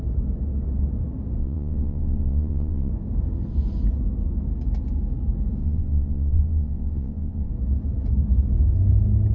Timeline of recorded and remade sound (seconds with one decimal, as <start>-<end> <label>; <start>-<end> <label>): 0.0-1.4 recorded; 1.4-2.9 remade; 2.9-5.6 recorded; 5.6-7.5 remade; 7.5-9.3 recorded